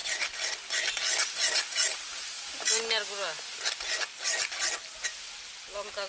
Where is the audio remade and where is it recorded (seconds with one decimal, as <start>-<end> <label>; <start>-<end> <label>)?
0.0-6.1 recorded